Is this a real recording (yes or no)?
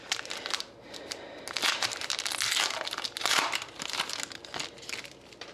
yes